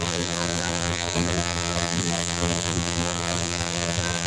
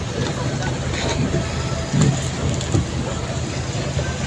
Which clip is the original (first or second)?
second